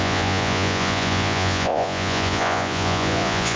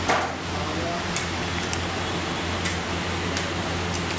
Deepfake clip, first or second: first